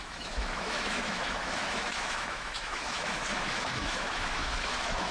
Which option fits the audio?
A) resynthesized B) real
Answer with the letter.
A